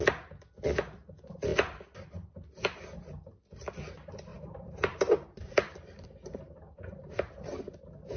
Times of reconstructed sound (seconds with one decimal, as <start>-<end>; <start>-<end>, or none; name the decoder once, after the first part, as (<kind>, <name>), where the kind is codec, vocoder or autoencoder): 4.3-7.1 (vocoder, BigVGAN v2)